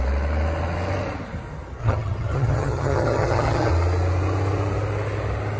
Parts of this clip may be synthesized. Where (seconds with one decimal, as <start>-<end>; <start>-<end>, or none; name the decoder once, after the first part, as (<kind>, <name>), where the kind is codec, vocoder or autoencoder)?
1.8-3.7 (vocoder, HiFi-GAN)